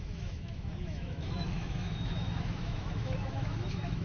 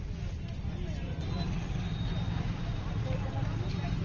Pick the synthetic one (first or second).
first